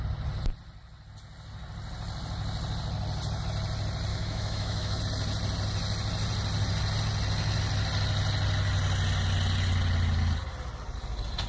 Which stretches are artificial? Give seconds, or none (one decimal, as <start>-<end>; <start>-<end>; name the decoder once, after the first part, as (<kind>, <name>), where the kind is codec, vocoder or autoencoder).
4.1-5.0 (autoencoder, DAC-VAE)

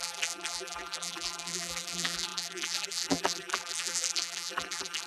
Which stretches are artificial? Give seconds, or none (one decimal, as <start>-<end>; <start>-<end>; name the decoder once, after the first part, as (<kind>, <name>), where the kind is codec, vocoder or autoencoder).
0.0-5.1 (vocoder, BigVGAN v2)

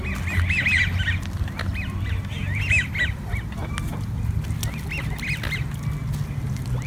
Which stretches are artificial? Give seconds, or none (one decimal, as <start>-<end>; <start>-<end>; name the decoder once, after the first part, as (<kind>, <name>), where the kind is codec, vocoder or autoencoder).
none

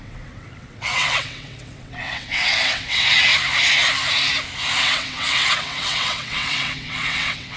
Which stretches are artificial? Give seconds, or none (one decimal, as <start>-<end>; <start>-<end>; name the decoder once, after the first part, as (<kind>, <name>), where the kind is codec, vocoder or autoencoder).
0.0-3.3 (vocoder, WaveNeXt); 4.8-7.6

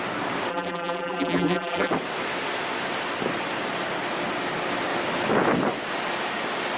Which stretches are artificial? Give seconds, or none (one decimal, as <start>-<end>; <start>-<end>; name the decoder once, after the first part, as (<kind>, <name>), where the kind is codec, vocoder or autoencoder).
0.5-1.9 (vocoder, BigVGAN v2)

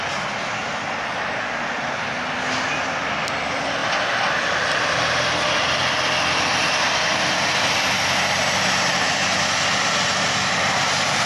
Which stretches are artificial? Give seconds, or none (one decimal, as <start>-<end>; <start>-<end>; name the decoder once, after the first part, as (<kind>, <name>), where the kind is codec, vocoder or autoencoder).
none